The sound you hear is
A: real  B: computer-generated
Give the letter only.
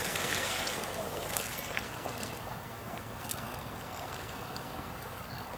B